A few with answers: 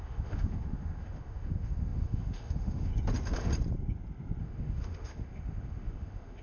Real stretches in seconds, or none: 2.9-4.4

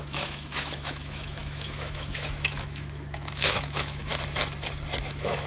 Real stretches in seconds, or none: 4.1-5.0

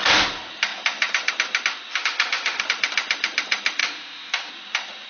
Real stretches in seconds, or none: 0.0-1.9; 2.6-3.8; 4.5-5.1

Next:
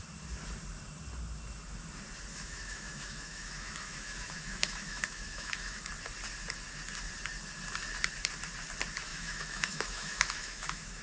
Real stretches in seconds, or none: 0.0-2.3; 5.9-9.1

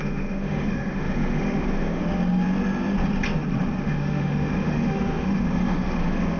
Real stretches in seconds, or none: 2.0-3.8

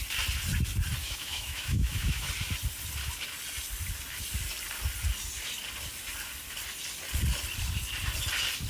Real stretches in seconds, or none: 0.0-1.0; 2.3-8.7

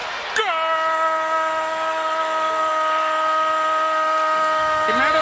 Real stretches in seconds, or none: 0.0-5.2

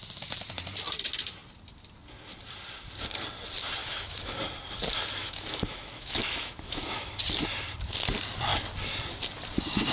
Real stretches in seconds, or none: 0.0-3.8; 4.4-5.2; 7.2-9.9